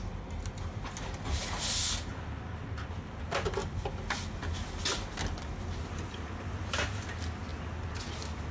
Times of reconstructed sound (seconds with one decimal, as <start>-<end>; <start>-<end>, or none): none